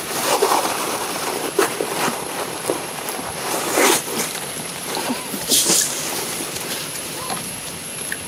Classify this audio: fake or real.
fake